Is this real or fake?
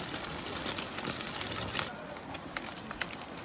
real